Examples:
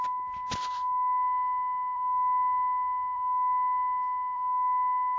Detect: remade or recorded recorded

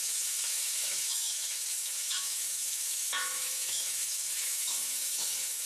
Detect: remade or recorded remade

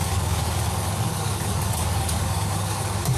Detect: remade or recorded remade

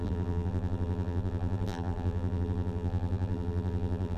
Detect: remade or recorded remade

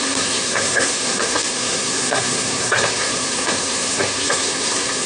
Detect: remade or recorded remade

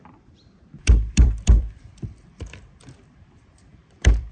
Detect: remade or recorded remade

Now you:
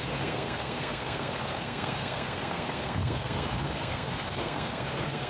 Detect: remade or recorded remade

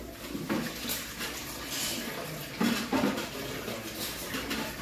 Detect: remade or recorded recorded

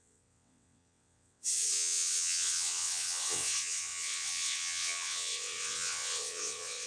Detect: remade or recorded remade